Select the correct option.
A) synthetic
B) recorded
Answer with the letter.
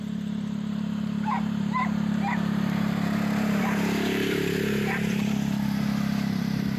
A